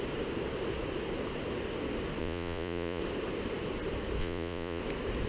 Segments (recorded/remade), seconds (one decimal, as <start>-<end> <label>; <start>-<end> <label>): 0.0-2.2 recorded; 2.2-3.0 remade; 3.0-4.2 recorded; 4.2-4.8 remade; 4.8-5.3 recorded